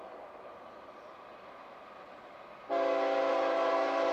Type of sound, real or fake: real